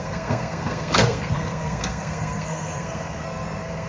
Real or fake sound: fake